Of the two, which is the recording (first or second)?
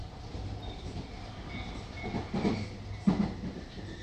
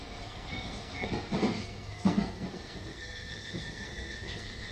first